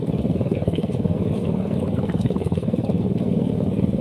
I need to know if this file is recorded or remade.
remade